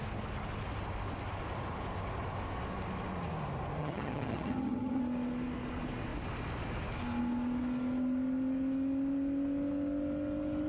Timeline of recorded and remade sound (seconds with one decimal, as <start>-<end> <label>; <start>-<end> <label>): 0.0-3.8 recorded; 3.8-5.0 remade; 5.0-10.7 recorded